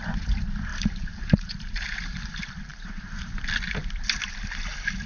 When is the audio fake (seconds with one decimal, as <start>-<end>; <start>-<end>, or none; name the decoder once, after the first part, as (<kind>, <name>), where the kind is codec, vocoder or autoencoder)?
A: 0.7-1.7 (vocoder, BigVGAN v2); 2.7-3.4